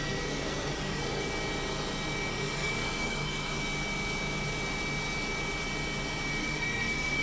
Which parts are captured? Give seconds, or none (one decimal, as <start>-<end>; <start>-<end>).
1.3-2.3; 3.6-6.4